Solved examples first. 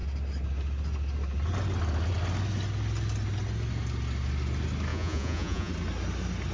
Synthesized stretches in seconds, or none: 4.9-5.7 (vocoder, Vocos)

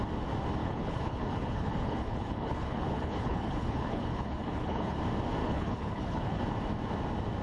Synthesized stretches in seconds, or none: 0.6-5.0 (codec, HILCodec); 5.4-6.4

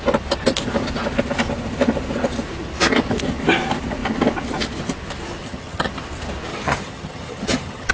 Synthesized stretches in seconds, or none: 5.4-5.9 (vocoder, HiFi-GAN); 6.5-7.9

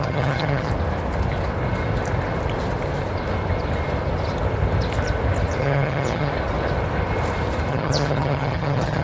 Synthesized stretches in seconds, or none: 0.0-0.7 (vocoder, HiFi-GAN); 5.6-6.3; 7.7-9.0

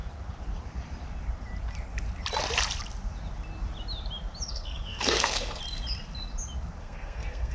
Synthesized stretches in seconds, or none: 4.5-5.6 (codec, SNAC); 6.8-7.5

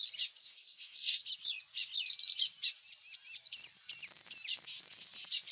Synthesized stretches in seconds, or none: 0.4-1.2 (codec, SNAC)

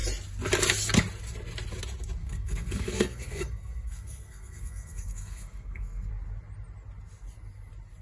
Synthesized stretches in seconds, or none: 2.2-6.1 (codec, SNAC)

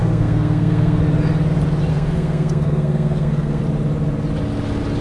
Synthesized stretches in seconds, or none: 0.0-1.0 (codec, SNAC); 1.9-3.6